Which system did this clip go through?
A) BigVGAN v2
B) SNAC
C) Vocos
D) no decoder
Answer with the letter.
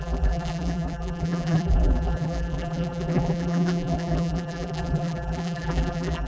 A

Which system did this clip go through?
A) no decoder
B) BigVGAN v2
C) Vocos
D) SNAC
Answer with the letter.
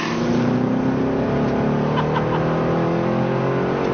A